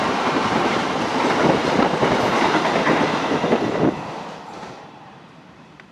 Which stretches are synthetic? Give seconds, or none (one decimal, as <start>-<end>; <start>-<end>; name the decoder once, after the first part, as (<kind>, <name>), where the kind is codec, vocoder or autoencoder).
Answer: 0.0-1.2 (vocoder, BigVGAN v2); 4.5-5.9